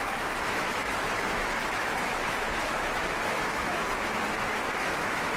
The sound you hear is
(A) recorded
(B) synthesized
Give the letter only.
B